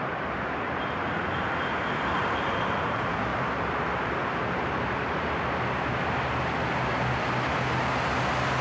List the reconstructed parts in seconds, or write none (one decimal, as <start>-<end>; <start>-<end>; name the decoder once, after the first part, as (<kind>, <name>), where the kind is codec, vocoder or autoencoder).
none